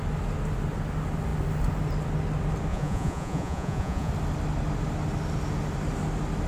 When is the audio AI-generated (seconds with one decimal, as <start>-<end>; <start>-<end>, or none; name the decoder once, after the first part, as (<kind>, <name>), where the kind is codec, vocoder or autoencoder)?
2.7-4.1 (vocoder, Vocos)